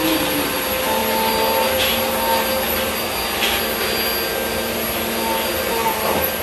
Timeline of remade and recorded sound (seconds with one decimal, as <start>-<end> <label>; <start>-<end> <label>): 0.0-6.4 recorded